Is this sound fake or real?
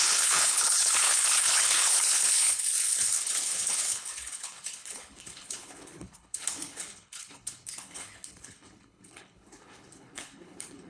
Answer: fake